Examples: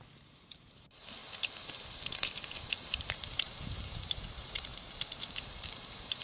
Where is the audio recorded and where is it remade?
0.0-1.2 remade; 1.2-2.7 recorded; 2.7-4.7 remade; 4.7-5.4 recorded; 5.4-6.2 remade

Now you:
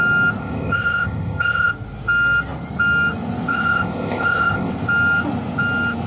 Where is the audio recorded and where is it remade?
0.0-0.4 recorded; 0.4-1.7 remade; 1.7-3.5 recorded; 3.5-4.7 remade; 4.7-6.1 recorded

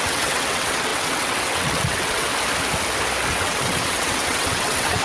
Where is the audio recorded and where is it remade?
0.0-2.3 remade; 2.3-3.3 recorded; 3.3-5.0 remade

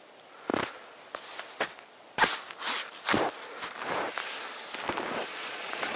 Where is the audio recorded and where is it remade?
0.0-5.3 recorded; 5.3-6.0 remade

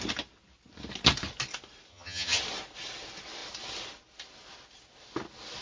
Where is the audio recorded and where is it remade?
0.0-1.9 recorded; 1.9-2.4 remade; 2.4-5.6 recorded

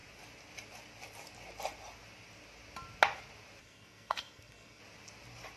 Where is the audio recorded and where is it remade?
0.0-3.6 recorded; 3.6-4.8 remade; 4.8-5.6 recorded